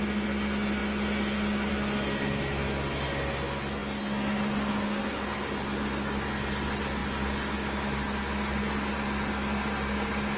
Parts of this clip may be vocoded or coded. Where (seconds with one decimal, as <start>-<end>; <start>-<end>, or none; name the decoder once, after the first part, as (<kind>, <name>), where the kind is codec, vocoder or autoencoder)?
none